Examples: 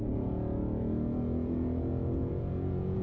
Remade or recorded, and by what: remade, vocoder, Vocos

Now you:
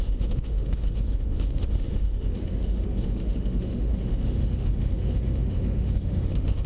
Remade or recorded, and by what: remade, autoencoder, DAC-VAE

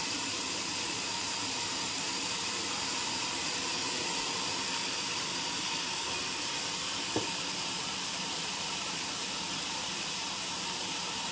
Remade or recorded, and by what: remade, vocoder, BigVGAN v2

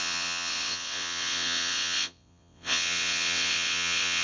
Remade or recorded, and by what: remade, vocoder, WaveNeXt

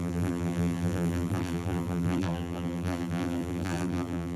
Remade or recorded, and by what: remade, vocoder, BigVGAN v2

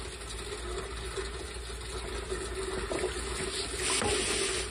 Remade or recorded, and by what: recorded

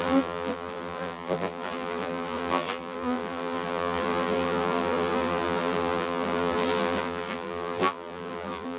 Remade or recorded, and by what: remade, vocoder, BigVGAN v2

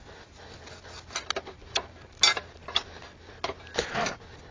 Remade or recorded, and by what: recorded